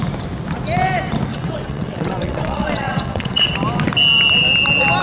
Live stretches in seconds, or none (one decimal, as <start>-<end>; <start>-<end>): 0.0-1.3; 3.5-5.0